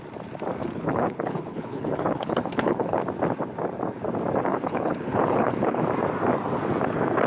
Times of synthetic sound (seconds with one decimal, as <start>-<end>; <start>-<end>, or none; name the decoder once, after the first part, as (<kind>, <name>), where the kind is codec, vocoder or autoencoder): 0.6-3.0 (codec, HILCodec); 4.5-5.8